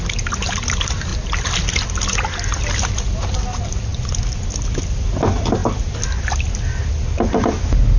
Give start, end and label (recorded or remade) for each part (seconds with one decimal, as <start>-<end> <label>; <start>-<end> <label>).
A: 0.0-8.0 recorded